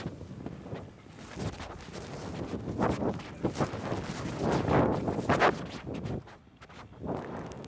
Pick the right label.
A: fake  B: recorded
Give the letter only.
B